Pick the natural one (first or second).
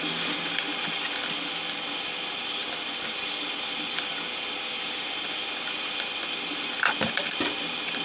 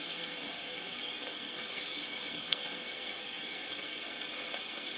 first